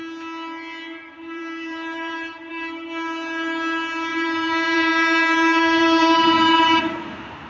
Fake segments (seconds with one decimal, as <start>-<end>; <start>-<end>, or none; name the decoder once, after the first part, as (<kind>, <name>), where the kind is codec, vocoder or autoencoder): 1.0-2.5 (vocoder, BigVGAN v2); 4.1-6.8